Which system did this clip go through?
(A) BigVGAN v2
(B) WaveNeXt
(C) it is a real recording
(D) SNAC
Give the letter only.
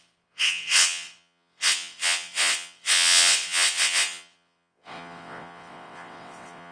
B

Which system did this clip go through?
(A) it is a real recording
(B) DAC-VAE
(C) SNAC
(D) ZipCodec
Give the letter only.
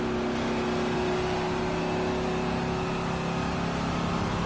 A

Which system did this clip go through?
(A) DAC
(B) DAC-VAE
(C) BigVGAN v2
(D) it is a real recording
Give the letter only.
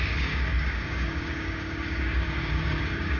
A